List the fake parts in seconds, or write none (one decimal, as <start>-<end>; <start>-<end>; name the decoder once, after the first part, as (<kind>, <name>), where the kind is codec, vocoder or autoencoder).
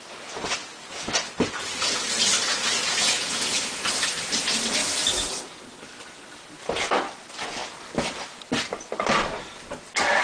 2.5-3.8 (vocoder, Vocos); 4.8-5.6